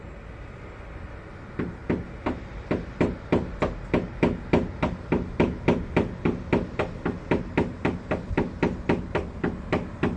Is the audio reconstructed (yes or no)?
no